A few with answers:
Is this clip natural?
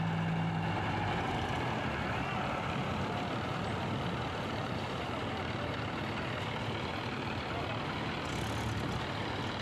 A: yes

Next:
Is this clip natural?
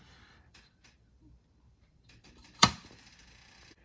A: no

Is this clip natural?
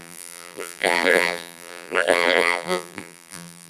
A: no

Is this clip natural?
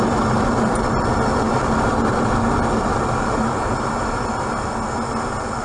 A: yes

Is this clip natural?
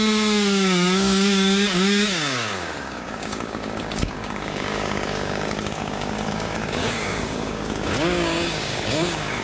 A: no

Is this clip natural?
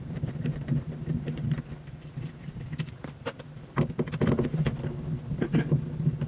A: no